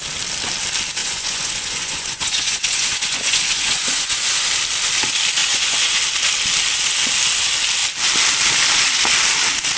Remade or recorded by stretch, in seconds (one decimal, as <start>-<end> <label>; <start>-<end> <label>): 0.0-1.0 recorded; 1.0-4.5 remade; 4.5-5.4 recorded; 5.4-6.0 remade; 6.0-9.8 recorded